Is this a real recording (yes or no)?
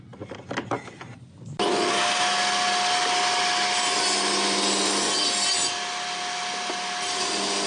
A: yes